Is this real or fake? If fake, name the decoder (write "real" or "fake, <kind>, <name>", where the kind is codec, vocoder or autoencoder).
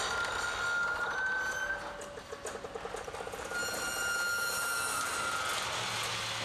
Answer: real